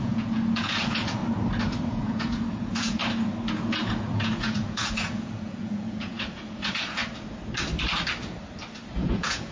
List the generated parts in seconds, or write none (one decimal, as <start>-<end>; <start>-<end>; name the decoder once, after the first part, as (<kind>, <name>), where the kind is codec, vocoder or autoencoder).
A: 0.0-1.2 (vocoder, Vocos); 1.9-3.0; 3.5-7.0; 8.9-9.5